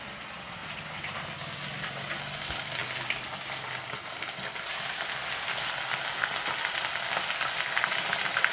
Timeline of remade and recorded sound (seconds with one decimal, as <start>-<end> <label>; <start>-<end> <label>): 0.0-8.5 recorded